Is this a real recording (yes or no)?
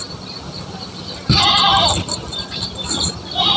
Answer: no